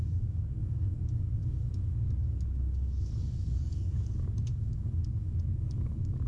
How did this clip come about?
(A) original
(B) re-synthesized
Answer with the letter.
B